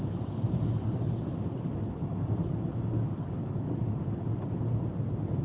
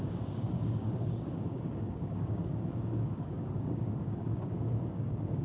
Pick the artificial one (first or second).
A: second